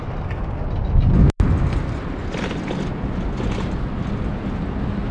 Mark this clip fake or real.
real